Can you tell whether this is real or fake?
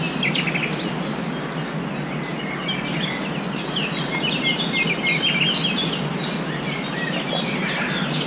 real